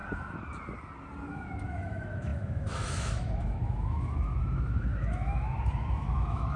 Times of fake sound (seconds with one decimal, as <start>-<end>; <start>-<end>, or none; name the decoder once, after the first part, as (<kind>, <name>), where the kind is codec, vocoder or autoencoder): 1.3-6.6 (autoencoder, DAC-VAE)